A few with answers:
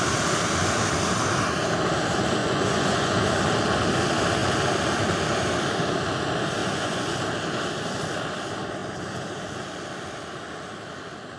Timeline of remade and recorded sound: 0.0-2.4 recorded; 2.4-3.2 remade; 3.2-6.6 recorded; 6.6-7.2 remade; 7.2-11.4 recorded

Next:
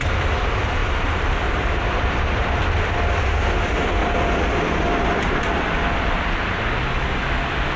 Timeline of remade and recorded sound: 0.0-0.8 recorded; 0.8-2.6 remade; 2.6-4.0 recorded; 4.0-5.6 remade; 5.6-7.8 recorded

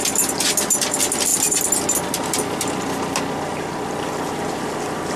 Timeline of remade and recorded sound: 0.0-5.2 recorded

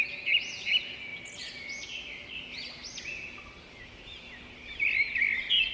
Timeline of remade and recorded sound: 0.0-5.7 recorded

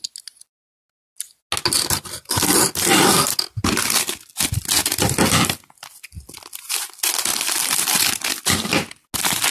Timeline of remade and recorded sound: 0.0-9.5 recorded

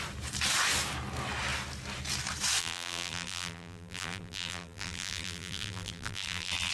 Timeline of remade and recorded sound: 0.0-2.6 recorded; 2.6-6.7 remade

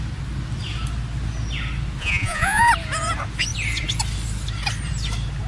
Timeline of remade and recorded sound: 0.0-2.0 recorded; 2.0-2.7 remade; 2.7-5.5 recorded